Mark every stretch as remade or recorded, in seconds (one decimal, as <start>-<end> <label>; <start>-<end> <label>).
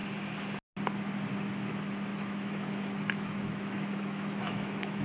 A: 0.0-2.1 recorded; 2.1-5.0 remade